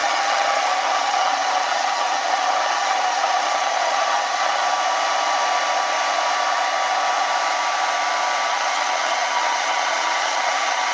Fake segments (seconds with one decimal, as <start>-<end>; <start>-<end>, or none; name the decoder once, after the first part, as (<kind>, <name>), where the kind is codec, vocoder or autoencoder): 0.0-4.6 (vocoder, HiFi-GAN); 8.5-10.9